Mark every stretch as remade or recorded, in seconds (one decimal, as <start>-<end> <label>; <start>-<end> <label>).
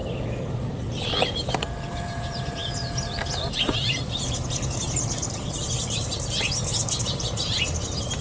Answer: 0.0-8.2 recorded